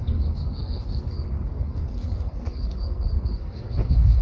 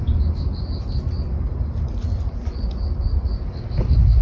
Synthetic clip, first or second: first